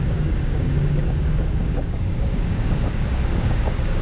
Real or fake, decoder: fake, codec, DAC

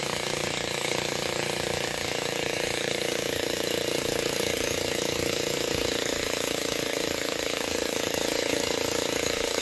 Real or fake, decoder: fake, codec, DAC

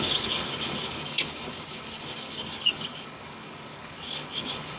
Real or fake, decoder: fake, codec, DAC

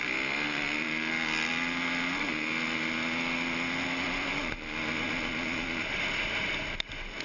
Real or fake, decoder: real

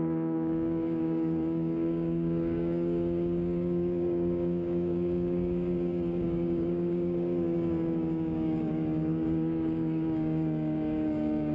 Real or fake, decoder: fake, codec, DAC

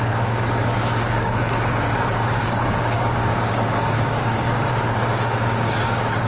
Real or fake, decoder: fake, codec, DAC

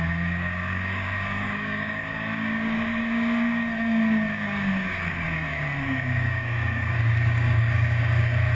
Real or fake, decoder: fake, codec, DAC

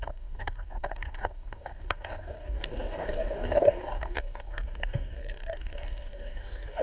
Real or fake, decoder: fake, codec, DAC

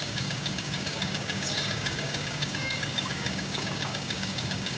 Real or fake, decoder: fake, codec, DAC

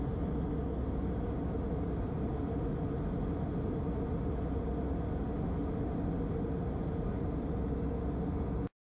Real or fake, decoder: real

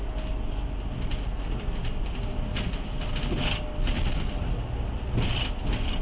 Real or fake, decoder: real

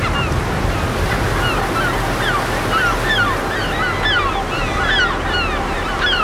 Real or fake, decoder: real